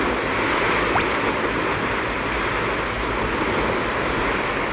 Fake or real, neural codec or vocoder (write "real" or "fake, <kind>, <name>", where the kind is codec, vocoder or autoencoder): real